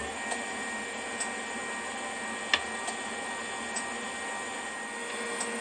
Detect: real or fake real